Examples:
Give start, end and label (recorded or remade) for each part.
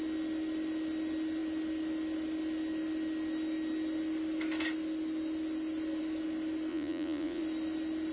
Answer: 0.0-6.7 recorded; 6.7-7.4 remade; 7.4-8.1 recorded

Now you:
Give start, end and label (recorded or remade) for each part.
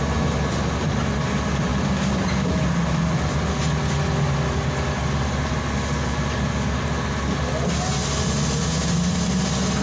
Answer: 0.0-9.8 recorded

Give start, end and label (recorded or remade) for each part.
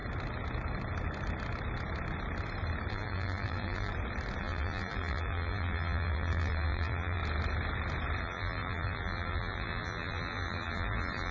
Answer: 0.0-2.9 recorded; 2.9-3.9 remade; 3.9-4.4 recorded; 4.4-7.2 remade; 7.2-8.2 recorded; 8.2-11.3 remade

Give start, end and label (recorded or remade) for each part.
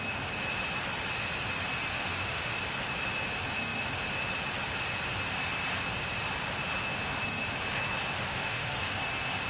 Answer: 0.0-1.9 recorded; 1.9-2.6 remade; 2.6-8.2 recorded; 8.2-9.0 remade; 9.0-9.5 recorded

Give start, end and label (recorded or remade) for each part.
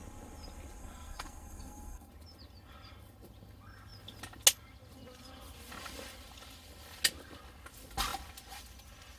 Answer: 0.0-0.8 recorded; 0.8-2.1 remade; 2.1-9.2 recorded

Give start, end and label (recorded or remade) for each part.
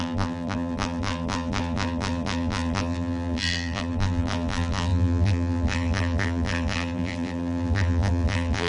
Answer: 0.0-8.7 remade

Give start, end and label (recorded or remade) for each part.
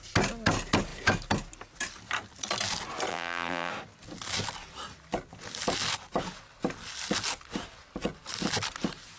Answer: 0.0-3.1 recorded; 3.1-3.7 remade; 3.7-9.2 recorded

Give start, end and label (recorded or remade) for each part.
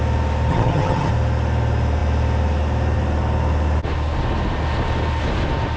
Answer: 0.0-0.5 recorded; 0.5-1.1 remade; 1.1-5.8 recorded